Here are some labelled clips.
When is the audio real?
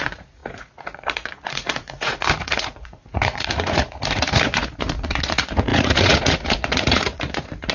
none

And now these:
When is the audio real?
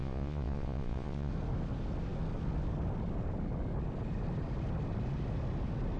1.3-6.0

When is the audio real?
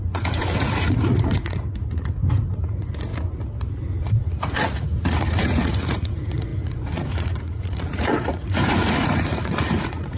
3.1-4.0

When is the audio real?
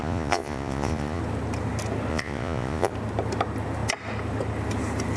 1.2-2.1; 2.9-5.2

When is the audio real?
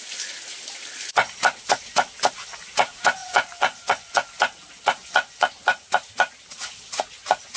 0.0-3.2; 4.3-5.0; 5.5-7.6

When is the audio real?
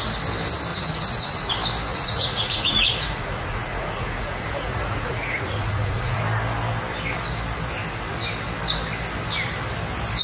0.0-0.7; 1.5-1.9; 6.2-10.2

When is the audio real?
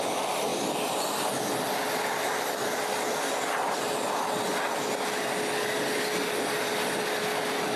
0.0-7.8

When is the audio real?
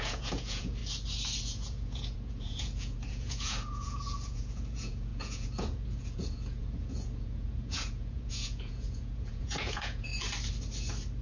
0.8-1.4; 10.1-11.2